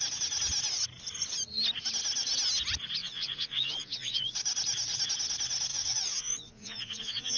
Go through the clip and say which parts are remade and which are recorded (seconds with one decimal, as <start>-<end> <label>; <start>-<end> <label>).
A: 0.0-3.0 recorded; 3.0-4.3 remade; 4.3-5.7 recorded; 5.7-7.4 remade